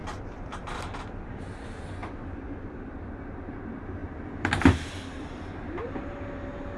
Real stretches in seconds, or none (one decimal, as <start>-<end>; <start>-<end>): 1.3-2.0; 3.1-4.0; 5.4-6.8